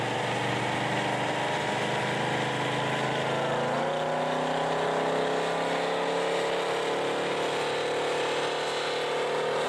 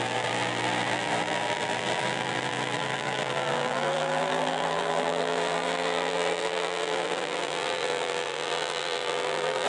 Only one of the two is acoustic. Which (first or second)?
first